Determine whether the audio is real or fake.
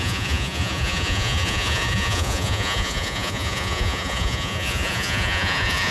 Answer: fake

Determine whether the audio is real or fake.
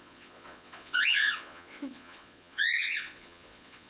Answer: fake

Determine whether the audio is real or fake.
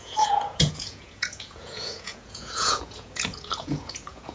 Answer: fake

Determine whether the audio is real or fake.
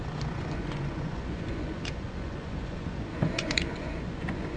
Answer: fake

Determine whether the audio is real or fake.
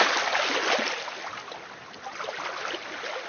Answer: real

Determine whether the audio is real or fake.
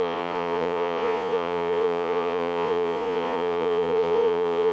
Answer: fake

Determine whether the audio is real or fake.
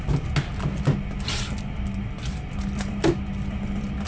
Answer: real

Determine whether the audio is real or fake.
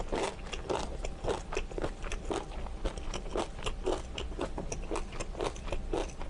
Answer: real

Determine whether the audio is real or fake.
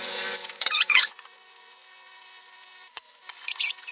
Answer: fake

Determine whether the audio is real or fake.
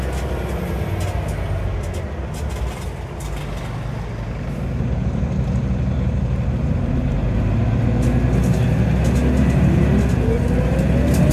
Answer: real